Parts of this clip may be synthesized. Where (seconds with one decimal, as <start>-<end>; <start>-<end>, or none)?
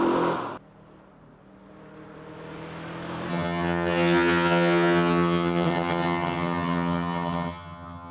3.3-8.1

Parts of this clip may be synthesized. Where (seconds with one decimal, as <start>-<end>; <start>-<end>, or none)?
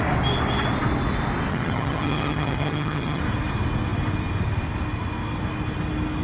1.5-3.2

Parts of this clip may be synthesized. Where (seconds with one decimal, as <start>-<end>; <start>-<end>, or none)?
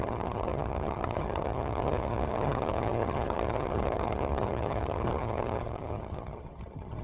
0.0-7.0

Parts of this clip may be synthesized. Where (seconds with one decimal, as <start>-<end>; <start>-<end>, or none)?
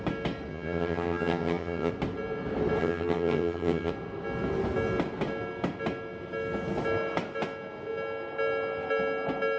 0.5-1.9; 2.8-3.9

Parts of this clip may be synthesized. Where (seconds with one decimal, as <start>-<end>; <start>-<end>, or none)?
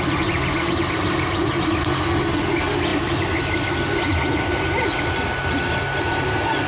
none